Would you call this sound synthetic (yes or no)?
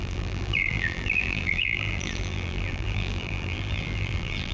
yes